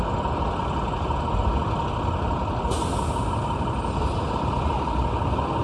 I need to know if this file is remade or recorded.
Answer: recorded